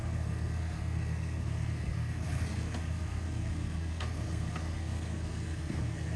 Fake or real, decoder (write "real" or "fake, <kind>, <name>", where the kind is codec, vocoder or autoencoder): fake, codec, SNAC